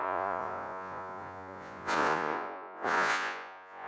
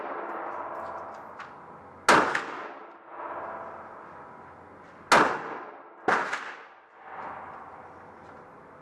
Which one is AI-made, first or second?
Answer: first